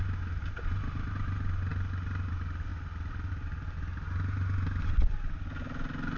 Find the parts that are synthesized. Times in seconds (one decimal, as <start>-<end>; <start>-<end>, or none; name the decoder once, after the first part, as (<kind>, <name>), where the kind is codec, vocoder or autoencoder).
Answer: none